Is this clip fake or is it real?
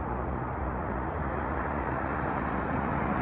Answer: fake